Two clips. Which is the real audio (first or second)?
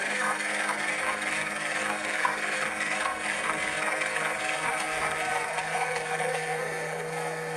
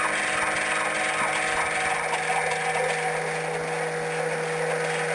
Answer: second